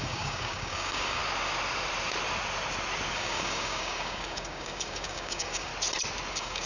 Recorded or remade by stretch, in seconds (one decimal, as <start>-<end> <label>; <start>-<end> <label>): 0.0-1.2 remade; 1.2-3.1 recorded; 3.1-5.7 remade; 5.7-6.3 recorded; 6.3-6.7 remade